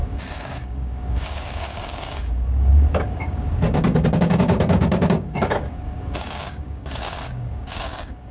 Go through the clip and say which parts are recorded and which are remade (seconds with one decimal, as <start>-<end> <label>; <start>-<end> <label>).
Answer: 0.0-8.3 remade